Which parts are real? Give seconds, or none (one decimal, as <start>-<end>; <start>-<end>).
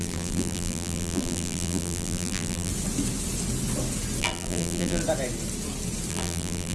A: 2.7-4.2; 5.0-6.1